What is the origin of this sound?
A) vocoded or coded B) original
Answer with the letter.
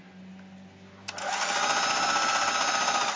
B